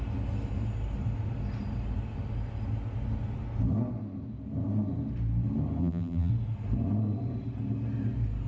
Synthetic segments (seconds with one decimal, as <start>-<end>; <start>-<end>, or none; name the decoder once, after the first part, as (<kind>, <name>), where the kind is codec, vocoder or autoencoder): 5.8-6.3 (vocoder, BigVGAN v2)